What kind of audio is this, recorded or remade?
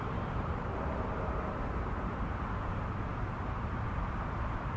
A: remade